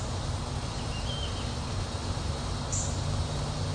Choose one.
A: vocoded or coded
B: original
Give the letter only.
B